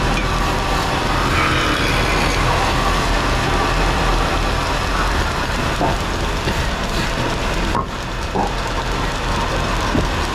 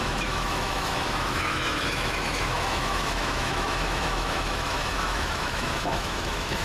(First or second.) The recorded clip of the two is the first